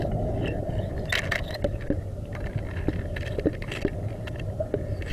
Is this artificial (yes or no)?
no